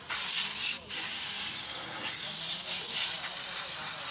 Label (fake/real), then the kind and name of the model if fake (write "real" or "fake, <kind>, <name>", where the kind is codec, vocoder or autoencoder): real